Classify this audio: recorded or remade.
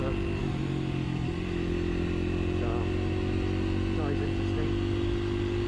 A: recorded